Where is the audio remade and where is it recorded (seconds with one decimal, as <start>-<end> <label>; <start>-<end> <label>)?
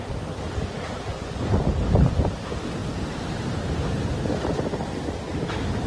0.0-1.1 recorded; 1.1-1.6 remade; 1.6-5.9 recorded